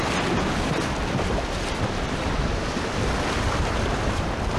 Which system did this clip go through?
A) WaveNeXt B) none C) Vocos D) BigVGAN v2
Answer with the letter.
D